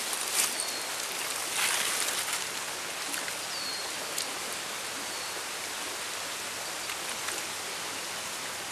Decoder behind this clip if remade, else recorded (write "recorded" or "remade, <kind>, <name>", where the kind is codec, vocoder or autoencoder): recorded